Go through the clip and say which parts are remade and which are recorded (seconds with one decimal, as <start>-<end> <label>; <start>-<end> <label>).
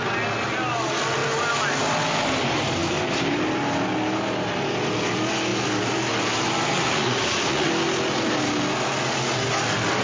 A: 0.0-6.7 recorded; 6.7-7.7 remade; 7.7-10.0 recorded